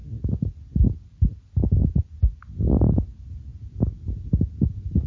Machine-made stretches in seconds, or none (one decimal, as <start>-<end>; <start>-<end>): none